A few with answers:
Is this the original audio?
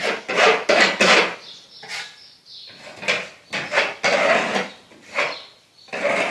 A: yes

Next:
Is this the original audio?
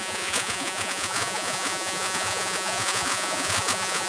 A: no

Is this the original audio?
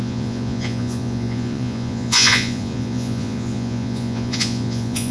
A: no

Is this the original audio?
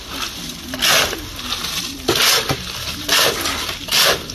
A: yes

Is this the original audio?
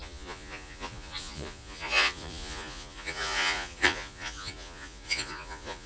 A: no